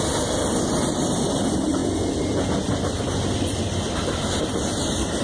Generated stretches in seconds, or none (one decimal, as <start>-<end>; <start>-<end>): none